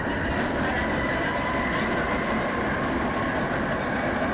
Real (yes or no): no